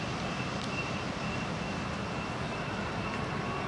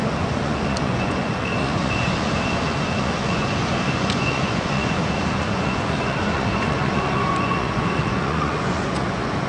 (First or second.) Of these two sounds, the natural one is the first